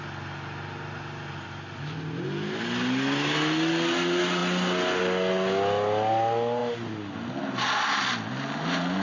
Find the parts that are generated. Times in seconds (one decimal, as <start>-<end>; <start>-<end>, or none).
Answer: none